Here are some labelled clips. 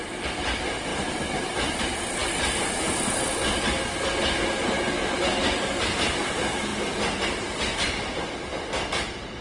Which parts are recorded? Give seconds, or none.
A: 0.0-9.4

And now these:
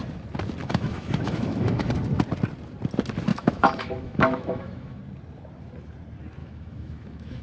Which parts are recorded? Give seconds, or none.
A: 0.0-0.6; 1.9-3.3; 5.0-6.4

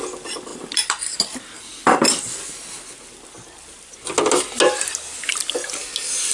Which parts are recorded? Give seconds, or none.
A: 0.0-0.5; 1.6-6.3

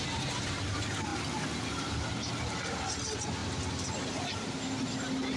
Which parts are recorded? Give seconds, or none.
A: 0.0-5.4

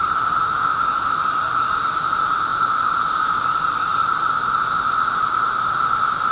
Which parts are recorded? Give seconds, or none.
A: 0.0-0.4; 1.2-6.3

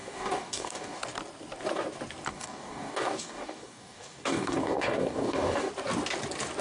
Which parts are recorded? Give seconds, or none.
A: 1.0-2.3; 5.7-6.6